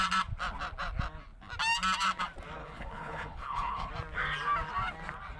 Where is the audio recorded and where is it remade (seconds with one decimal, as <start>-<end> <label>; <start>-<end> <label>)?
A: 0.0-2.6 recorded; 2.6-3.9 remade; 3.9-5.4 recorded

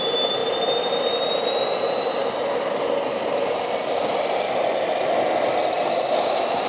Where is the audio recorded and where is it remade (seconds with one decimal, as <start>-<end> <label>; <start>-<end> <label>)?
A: 0.0-6.7 recorded

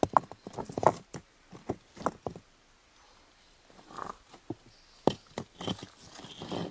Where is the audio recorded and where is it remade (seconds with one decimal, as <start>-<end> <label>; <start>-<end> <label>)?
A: 0.0-6.7 recorded

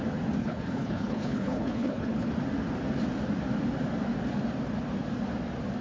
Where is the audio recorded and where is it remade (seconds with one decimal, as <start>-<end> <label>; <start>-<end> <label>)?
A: 0.0-0.4 recorded; 0.4-2.3 remade; 2.3-5.8 recorded

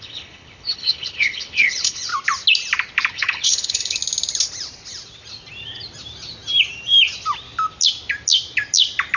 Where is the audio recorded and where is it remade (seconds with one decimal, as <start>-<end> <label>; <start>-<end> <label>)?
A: 0.0-2.1 remade; 2.1-3.1 recorded; 3.1-4.0 remade; 4.0-9.2 recorded